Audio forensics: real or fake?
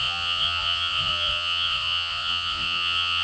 fake